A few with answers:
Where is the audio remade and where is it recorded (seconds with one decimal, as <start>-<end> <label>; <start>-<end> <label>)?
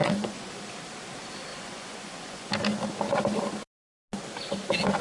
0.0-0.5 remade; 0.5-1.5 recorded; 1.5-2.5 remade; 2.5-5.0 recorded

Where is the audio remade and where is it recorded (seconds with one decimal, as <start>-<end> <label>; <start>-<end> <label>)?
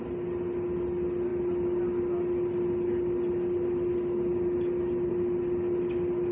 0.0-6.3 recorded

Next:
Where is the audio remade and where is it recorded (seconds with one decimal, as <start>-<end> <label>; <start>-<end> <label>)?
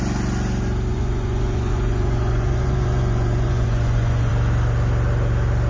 0.0-0.9 recorded; 0.9-4.3 remade; 4.3-5.7 recorded